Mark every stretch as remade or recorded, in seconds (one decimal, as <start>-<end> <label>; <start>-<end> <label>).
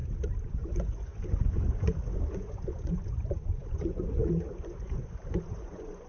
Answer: 0.0-0.5 recorded; 0.5-6.1 remade